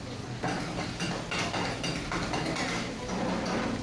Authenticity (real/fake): real